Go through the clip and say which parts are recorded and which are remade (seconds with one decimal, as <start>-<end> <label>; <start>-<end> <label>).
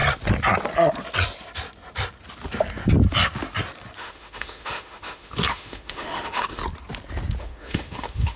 0.0-4.0 recorded; 4.0-6.6 remade; 6.6-7.4 recorded; 7.4-8.4 remade